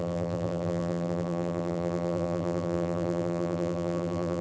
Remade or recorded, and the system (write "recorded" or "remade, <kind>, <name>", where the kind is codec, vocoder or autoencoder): remade, vocoder, BigVGAN v2